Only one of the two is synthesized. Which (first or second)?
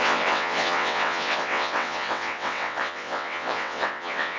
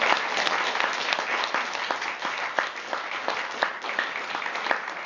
first